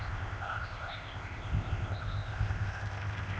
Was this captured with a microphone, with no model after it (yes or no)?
no